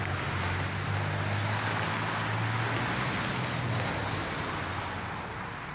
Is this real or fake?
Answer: real